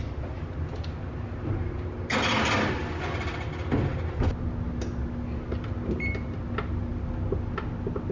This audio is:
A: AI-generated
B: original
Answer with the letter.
B